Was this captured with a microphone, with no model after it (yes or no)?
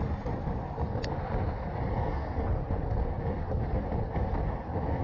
yes